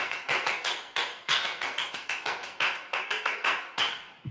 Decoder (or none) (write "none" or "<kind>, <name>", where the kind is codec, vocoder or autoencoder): codec, SNAC